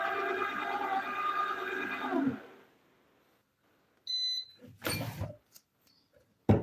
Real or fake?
real